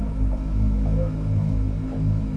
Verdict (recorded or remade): remade